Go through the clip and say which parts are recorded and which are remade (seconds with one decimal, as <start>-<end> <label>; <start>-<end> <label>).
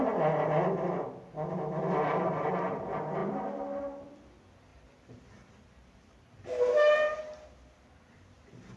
0.0-3.2 recorded; 3.2-3.8 remade; 3.8-4.7 recorded; 4.7-7.2 remade; 7.2-8.8 recorded